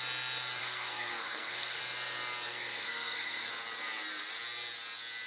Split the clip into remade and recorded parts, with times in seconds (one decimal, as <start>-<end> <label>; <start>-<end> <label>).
0.0-0.6 recorded; 0.6-1.8 remade; 1.8-2.5 recorded; 2.5-3.5 remade; 3.5-5.3 recorded